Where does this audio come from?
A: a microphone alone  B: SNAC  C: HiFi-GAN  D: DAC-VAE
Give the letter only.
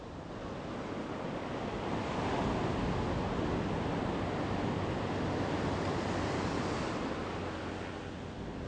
A